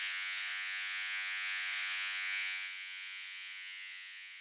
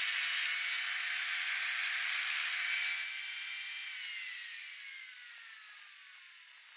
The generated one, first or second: first